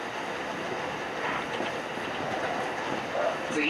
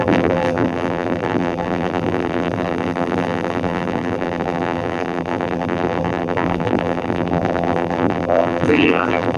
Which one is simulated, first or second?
second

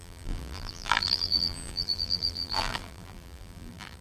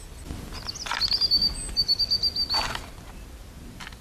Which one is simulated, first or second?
first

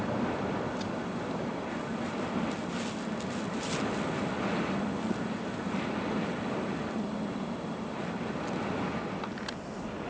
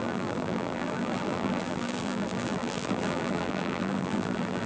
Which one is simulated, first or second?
second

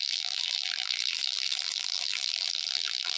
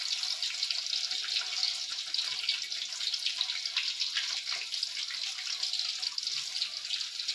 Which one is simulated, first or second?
first